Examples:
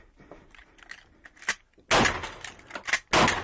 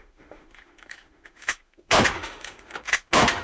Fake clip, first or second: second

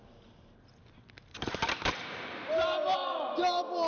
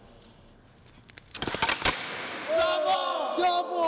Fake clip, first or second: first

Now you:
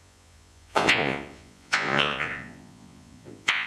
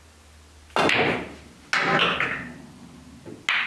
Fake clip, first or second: first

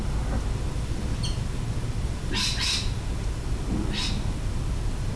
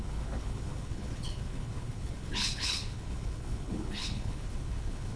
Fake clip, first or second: second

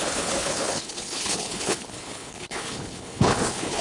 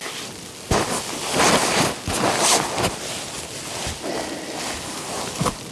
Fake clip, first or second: first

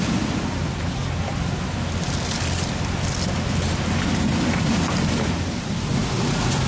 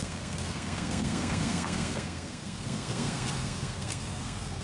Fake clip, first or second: second